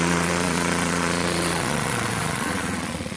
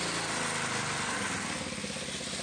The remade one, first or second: first